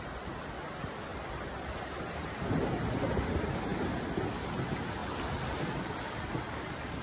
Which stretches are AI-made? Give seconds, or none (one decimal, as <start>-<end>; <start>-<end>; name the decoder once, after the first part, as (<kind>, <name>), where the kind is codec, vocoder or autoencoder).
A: none